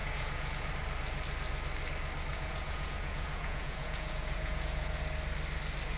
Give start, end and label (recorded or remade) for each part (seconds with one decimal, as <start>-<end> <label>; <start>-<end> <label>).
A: 0.0-0.7 remade; 0.7-2.3 recorded; 2.3-5.0 remade; 5.0-6.0 recorded